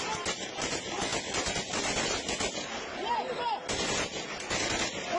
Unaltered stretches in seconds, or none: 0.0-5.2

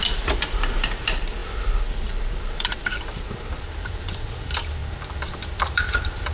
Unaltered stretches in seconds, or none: 4.8-5.4

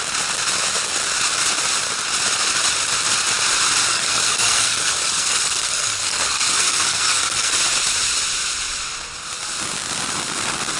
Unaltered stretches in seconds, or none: 0.0-3.9; 7.6-10.8

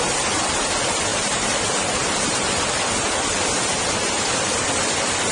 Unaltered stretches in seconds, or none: 0.0-5.3

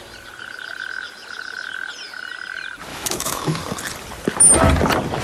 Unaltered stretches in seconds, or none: 0.0-2.9; 3.6-5.2

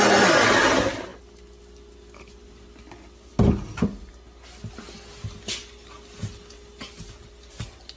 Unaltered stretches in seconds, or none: 0.0-8.0